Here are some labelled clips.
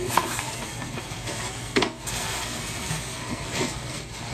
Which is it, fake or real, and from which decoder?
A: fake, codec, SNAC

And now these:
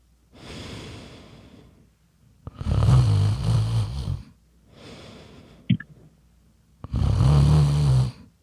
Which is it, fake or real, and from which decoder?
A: real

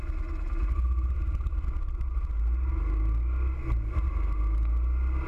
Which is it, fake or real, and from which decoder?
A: real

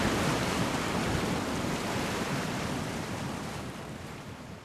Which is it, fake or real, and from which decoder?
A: real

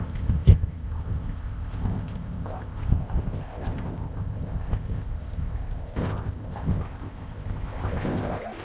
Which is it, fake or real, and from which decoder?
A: fake, codec, ZipCodec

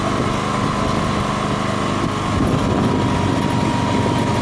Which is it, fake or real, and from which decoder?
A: real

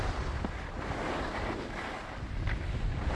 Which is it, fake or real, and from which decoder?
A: fake, vocoder, BigVGAN v2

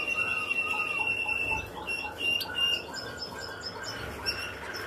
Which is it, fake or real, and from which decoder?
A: real